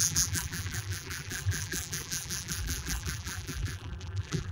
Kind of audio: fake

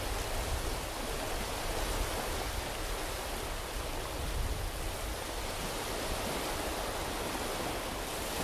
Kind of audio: real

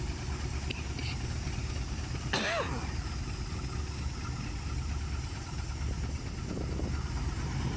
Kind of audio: real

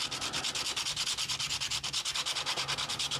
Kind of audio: real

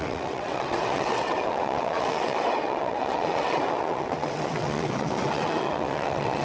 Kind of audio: fake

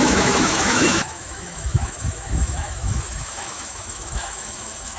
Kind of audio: fake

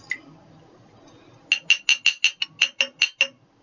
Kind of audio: real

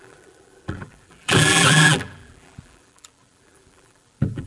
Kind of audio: fake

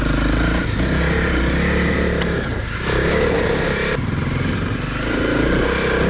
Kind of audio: real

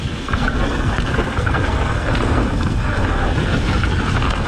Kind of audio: fake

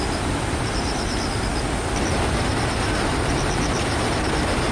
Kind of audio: real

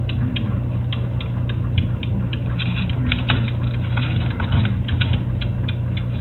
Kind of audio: real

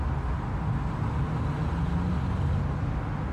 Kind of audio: real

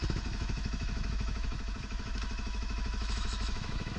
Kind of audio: fake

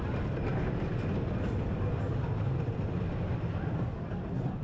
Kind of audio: real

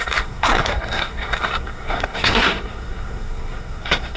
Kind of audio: fake